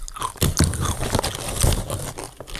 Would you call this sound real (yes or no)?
yes